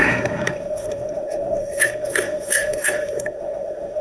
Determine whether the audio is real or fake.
fake